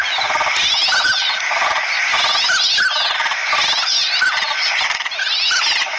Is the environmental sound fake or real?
real